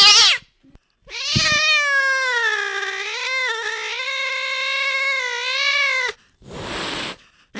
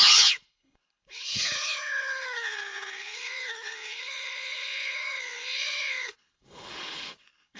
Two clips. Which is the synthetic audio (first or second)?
second